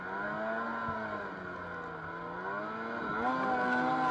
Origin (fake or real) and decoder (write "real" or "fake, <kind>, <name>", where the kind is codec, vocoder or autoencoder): real